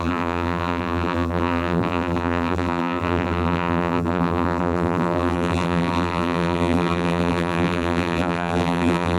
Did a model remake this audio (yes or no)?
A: yes